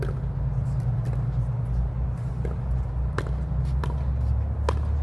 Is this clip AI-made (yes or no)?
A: no